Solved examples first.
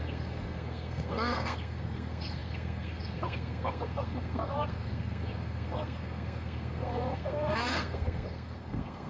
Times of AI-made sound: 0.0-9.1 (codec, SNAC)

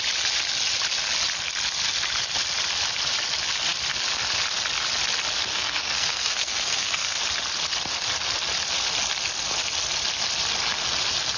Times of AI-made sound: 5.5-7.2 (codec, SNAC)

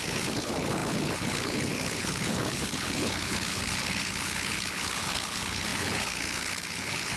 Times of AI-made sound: 0.0-7.2 (codec, HILCodec)